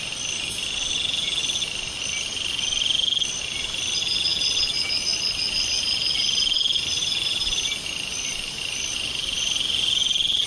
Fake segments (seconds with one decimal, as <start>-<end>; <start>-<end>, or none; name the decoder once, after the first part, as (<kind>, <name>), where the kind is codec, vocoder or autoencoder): 7.0-8.9 (vocoder, BigVGAN v2)